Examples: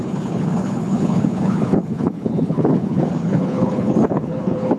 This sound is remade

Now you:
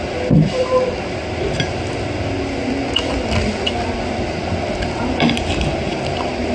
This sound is recorded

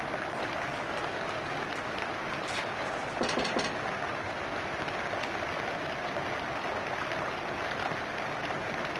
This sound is recorded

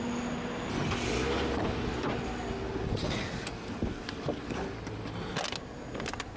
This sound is recorded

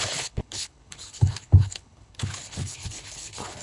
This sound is remade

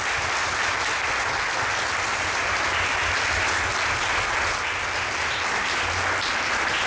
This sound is recorded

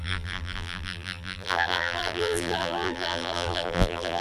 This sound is remade